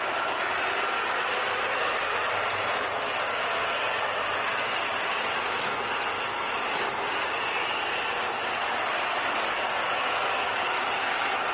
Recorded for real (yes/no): yes